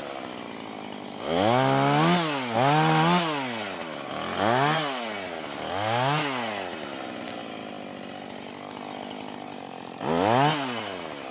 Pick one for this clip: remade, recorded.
recorded